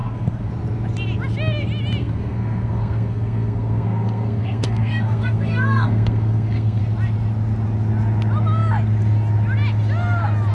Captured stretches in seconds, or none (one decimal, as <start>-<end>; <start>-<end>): 0.5-2.0; 6.8-10.5